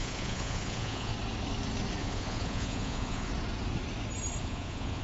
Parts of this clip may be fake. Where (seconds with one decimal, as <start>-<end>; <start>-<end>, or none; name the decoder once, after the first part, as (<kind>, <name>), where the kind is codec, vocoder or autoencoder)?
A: 0.0-1.1 (vocoder, Vocos); 2.0-3.3; 4.4-5.0